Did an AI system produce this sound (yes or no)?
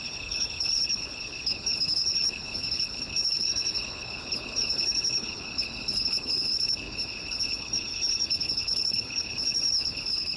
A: yes